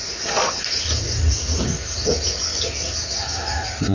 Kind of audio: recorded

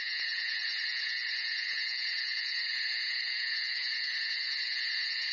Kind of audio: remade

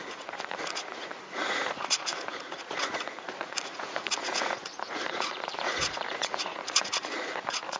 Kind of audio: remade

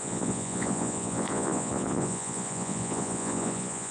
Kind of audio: remade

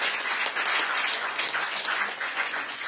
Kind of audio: remade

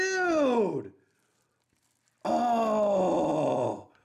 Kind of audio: recorded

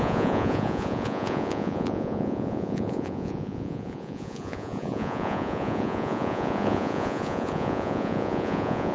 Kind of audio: remade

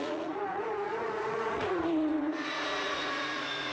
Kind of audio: remade